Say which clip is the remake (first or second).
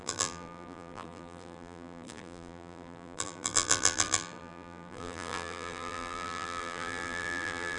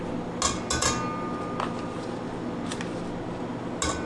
first